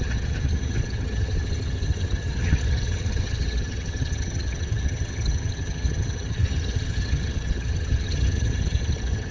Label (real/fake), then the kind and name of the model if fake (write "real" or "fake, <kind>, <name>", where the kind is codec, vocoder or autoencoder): fake, vocoder, HiFi-GAN